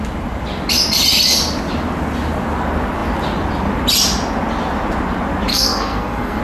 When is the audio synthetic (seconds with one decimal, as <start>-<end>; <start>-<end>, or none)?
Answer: 5.5-6.4